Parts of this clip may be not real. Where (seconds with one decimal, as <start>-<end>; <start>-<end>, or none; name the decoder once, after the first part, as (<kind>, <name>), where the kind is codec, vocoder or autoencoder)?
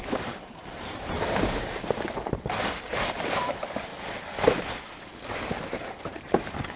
0.0-3.9 (vocoder, BigVGAN v2); 5.7-6.8